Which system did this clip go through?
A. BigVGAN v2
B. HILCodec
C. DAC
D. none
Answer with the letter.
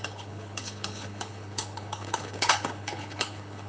B